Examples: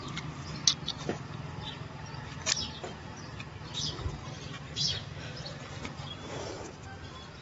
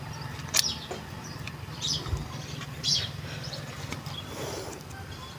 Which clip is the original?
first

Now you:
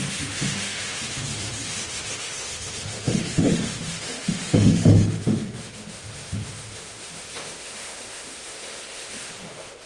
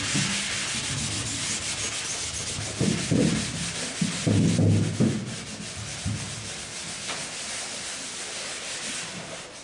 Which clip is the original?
second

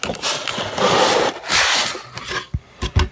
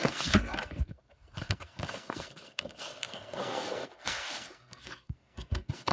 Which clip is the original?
first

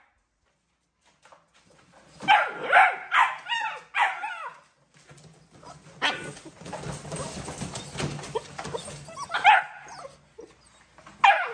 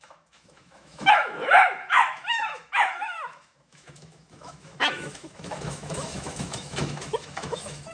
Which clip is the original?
first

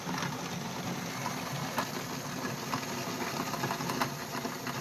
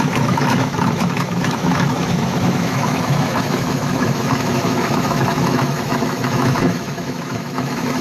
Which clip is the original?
first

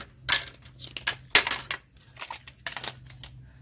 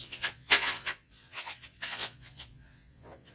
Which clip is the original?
first